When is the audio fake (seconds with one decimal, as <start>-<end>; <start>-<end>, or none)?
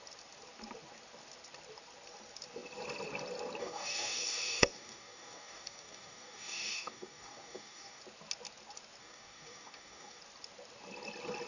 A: 3.6-8.0; 9.0-10.2